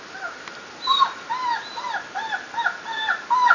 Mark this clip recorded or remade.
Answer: recorded